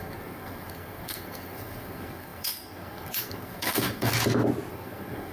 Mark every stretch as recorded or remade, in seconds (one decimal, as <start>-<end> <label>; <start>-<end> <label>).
0.0-4.1 remade; 4.1-4.7 recorded; 4.7-5.3 remade